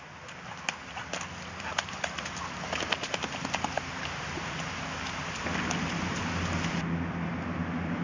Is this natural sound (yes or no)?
yes